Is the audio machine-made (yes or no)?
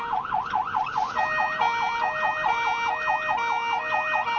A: no